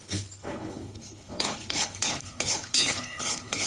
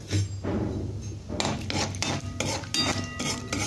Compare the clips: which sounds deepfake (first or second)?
first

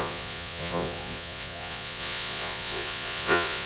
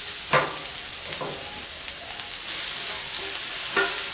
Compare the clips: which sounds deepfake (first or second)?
first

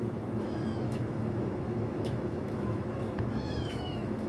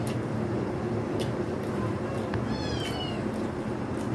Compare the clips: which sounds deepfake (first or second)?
first